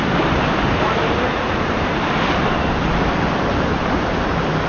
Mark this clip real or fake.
fake